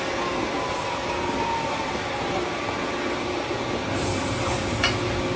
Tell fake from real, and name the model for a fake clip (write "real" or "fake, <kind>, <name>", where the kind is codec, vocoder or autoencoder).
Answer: real